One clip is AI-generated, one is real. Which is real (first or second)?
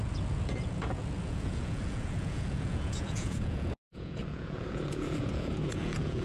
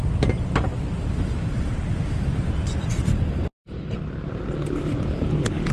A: second